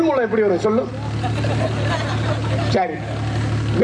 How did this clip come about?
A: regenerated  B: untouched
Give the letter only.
B